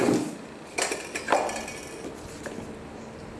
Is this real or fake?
real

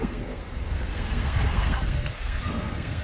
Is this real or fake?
fake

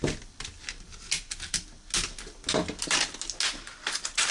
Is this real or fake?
real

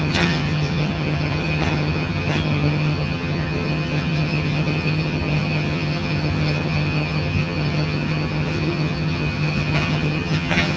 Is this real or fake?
fake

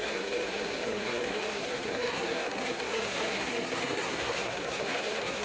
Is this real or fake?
fake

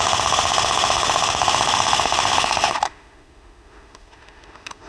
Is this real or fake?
fake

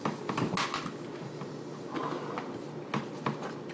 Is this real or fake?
real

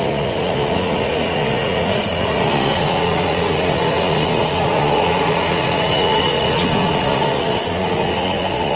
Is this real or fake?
fake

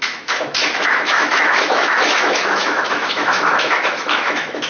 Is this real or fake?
fake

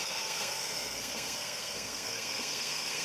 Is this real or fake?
fake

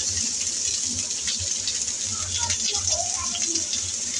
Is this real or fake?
real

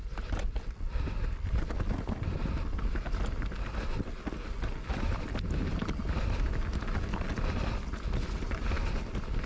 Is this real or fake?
real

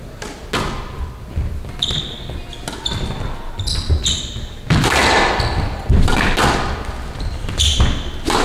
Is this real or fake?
real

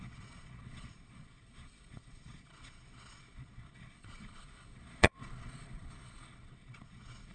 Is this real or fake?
fake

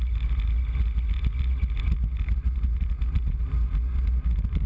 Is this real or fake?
real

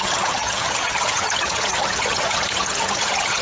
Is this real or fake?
fake